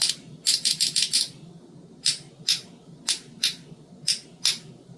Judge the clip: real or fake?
real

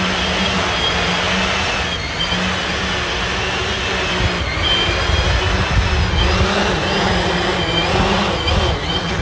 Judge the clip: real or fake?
real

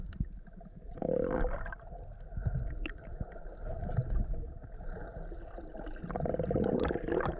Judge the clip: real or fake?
real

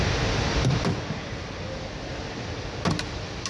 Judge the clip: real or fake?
real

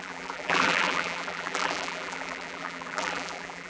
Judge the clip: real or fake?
fake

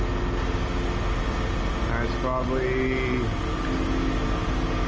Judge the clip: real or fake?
real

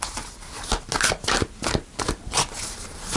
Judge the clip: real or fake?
real